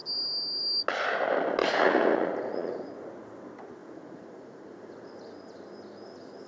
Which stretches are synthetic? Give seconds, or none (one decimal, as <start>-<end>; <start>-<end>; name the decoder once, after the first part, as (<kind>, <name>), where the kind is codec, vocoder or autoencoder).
1.6-2.9 (vocoder, Vocos); 3.8-5.3